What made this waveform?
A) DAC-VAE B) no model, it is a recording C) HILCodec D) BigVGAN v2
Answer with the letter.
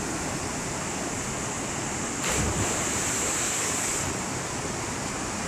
B